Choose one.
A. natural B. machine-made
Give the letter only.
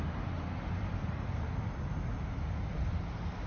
A